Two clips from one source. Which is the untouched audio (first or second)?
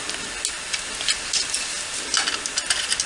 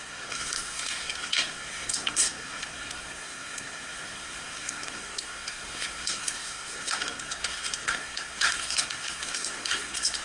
first